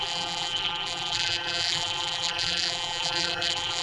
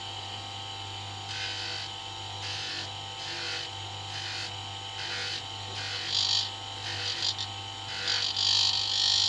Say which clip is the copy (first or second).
first